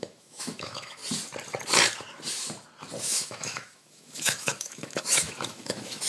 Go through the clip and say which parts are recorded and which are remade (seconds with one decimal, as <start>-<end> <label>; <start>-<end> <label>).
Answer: 0.0-1.0 remade; 1.0-3.0 recorded; 3.0-6.1 remade